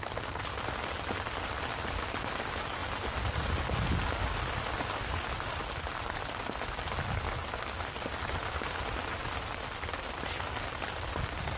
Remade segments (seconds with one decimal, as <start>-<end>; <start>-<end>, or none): none